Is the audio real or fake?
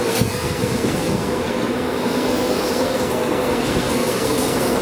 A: fake